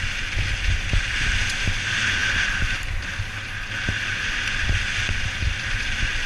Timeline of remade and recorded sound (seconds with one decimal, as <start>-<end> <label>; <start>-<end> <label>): 0.0-6.3 recorded